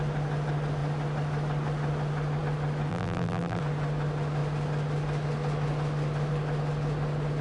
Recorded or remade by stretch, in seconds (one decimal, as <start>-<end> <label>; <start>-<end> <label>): 0.0-2.9 recorded; 2.9-3.6 remade; 3.6-7.4 recorded